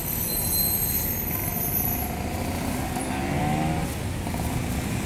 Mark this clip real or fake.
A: real